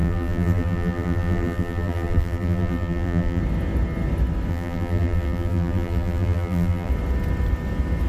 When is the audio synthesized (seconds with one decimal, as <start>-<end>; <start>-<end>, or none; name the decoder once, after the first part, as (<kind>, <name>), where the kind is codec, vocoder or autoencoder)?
0.0-3.4 (vocoder, BigVGAN v2); 4.5-6.9